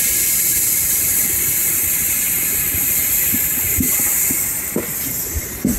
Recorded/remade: remade